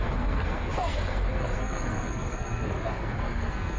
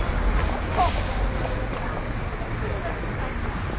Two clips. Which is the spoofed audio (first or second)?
first